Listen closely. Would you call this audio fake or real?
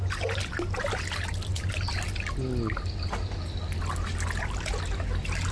real